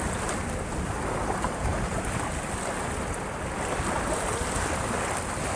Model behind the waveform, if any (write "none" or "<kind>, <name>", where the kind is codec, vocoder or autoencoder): none